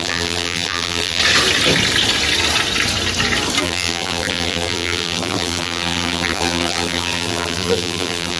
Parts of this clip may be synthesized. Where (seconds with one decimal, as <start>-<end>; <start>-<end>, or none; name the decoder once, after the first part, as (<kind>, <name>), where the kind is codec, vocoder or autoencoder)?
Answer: 0.0-1.2 (vocoder, BigVGAN v2); 3.6-8.4